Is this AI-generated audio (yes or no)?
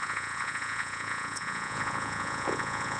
yes